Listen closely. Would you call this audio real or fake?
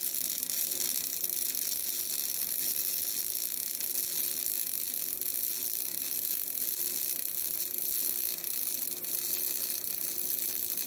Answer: real